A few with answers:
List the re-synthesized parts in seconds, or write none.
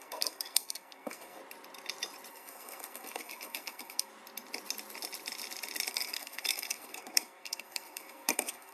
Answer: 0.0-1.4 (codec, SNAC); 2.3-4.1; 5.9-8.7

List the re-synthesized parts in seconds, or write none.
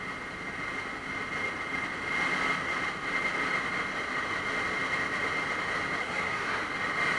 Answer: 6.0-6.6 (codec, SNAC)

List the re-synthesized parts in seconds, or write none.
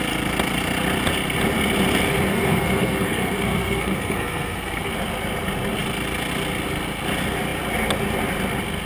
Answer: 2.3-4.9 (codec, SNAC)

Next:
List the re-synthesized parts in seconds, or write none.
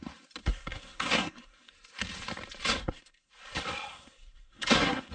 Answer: 0.4-1.7 (codec, SNAC); 2.8-3.3; 3.9-5.1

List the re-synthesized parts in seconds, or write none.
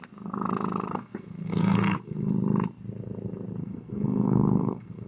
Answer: 0.9-2.3 (codec, SNAC); 3.6-5.1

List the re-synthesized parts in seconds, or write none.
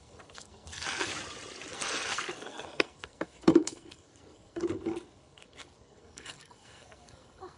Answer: 0.0-1.1 (codec, SNAC); 1.7-7.6